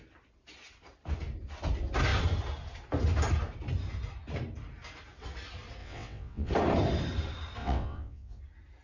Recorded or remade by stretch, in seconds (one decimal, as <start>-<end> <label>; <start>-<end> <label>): 0.0-5.8 recorded; 5.8-6.5 remade; 6.5-7.6 recorded; 7.6-8.4 remade; 8.4-8.8 recorded

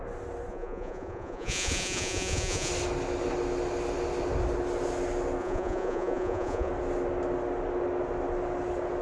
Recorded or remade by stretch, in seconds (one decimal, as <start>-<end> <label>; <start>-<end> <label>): 0.0-0.5 recorded; 0.5-2.7 remade; 2.7-5.4 recorded; 5.4-6.7 remade; 6.7-9.0 recorded

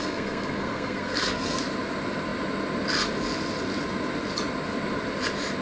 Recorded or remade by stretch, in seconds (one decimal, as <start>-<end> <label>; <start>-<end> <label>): 0.0-1.6 remade; 1.6-5.6 recorded

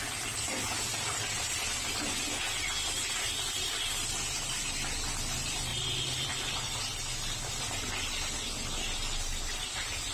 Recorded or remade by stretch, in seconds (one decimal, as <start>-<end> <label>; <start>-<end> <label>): 0.0-5.7 recorded; 5.7-6.8 remade; 6.8-10.1 recorded

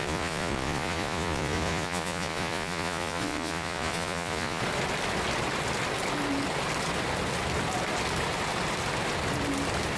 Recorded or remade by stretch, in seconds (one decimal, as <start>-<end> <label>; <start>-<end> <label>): 0.0-4.6 remade; 4.6-10.0 recorded